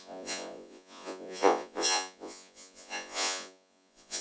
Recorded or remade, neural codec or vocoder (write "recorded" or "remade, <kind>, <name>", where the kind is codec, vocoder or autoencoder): remade, vocoder, Vocos